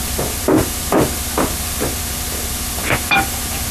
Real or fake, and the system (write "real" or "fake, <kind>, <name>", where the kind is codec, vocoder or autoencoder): real